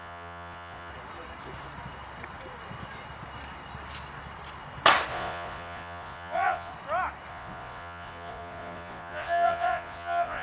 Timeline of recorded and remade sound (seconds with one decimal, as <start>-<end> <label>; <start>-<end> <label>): 0.0-0.9 remade; 0.9-5.1 recorded; 5.1-6.7 remade; 6.7-7.3 recorded; 7.3-10.4 remade

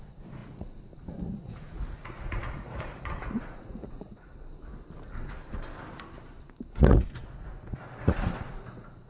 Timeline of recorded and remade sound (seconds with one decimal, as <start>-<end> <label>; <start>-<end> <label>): 0.0-4.3 remade; 4.3-6.7 recorded; 6.7-9.1 remade